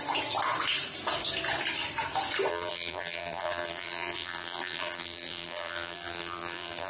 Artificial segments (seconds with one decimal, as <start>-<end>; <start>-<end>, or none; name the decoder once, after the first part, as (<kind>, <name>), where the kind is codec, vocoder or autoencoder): 2.5-6.9 (vocoder, BigVGAN v2)